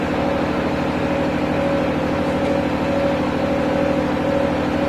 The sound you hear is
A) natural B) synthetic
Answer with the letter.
A